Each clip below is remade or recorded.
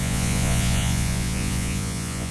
remade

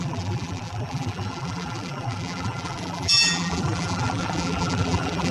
remade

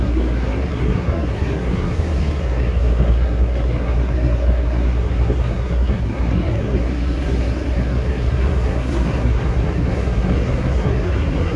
remade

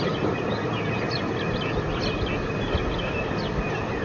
recorded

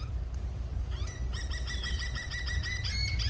recorded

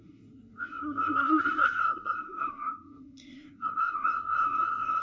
remade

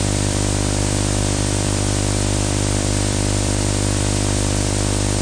remade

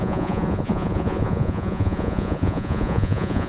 remade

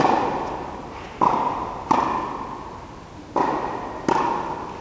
recorded